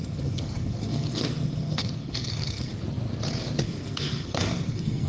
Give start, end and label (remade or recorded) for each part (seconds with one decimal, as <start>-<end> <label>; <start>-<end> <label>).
0.0-2.7 remade; 2.7-3.6 recorded; 3.6-5.1 remade